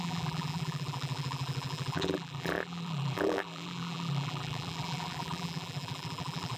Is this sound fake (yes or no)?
yes